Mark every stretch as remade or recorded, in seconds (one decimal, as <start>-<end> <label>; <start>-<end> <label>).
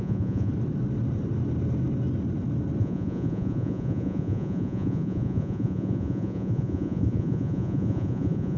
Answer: 0.0-0.5 remade; 0.5-2.8 recorded; 2.8-8.6 remade